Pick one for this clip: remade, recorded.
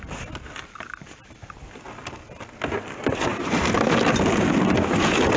recorded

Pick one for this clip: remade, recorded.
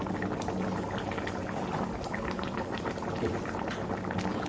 recorded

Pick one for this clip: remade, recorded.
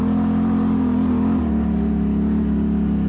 recorded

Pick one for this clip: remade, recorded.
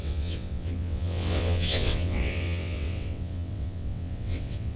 remade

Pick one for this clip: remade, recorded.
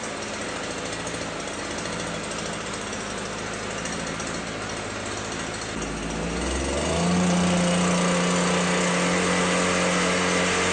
recorded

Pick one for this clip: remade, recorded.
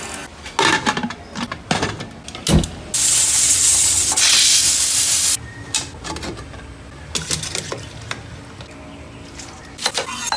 recorded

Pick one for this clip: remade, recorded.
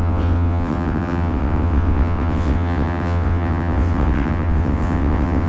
remade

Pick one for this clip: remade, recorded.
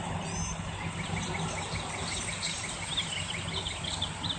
recorded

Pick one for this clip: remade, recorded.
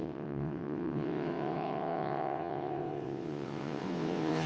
remade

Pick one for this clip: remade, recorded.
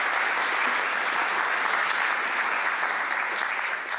recorded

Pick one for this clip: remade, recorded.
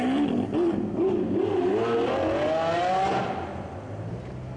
recorded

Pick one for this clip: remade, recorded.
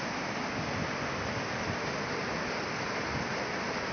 recorded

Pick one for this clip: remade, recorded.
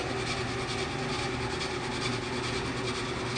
recorded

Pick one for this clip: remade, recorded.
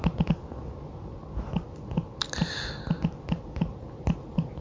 recorded